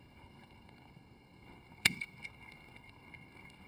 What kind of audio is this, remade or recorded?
remade